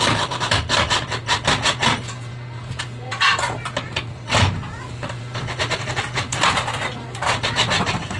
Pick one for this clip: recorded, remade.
recorded